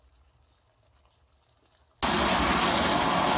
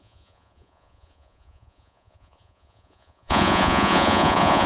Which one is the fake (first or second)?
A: second